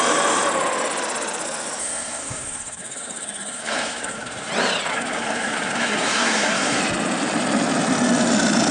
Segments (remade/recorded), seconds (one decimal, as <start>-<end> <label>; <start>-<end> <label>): 0.0-1.8 recorded; 1.8-4.5 remade; 4.5-4.9 recorded; 4.9-6.8 remade; 6.8-8.7 recorded